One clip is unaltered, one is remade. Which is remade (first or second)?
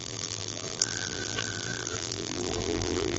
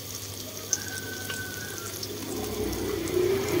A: first